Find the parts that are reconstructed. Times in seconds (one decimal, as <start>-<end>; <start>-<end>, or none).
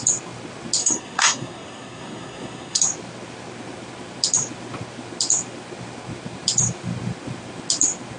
0.8-2.8